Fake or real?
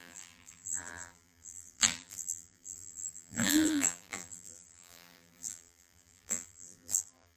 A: fake